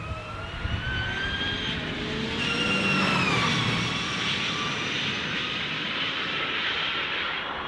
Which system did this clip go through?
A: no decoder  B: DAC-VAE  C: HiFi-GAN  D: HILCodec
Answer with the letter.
A